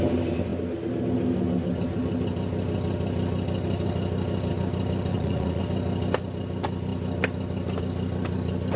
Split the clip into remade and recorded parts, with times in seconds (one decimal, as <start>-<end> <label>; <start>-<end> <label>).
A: 0.0-5.1 recorded; 5.1-5.6 remade; 5.6-8.8 recorded